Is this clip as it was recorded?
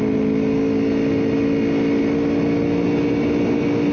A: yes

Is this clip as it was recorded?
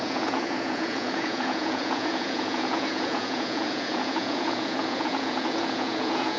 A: no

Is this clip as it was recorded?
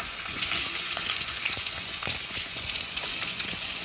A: no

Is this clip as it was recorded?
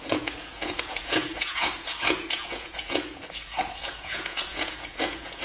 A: no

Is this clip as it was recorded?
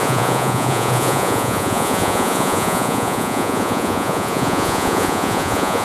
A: no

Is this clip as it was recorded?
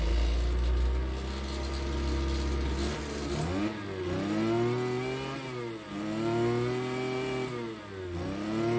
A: yes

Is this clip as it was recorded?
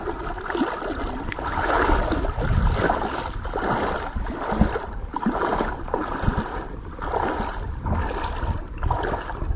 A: yes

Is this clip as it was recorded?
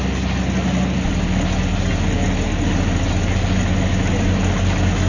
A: yes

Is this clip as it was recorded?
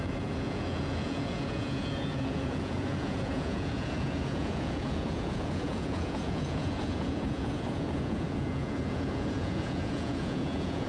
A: no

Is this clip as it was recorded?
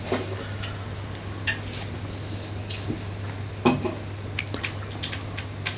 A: yes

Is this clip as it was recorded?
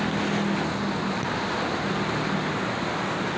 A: yes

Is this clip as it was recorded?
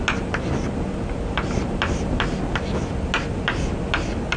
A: yes